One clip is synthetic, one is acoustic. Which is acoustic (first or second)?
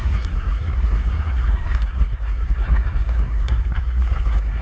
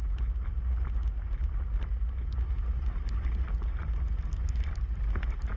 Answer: second